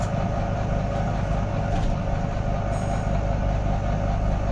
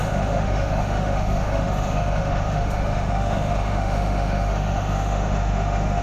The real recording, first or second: first